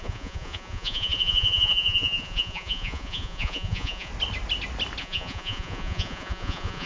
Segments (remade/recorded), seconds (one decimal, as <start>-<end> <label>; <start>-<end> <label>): 0.0-4.1 remade; 4.1-5.0 recorded; 5.0-6.9 remade